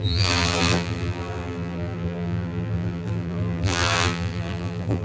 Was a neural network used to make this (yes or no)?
yes